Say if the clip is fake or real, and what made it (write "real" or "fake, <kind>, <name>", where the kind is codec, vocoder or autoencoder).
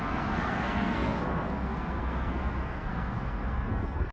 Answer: fake, codec, SNAC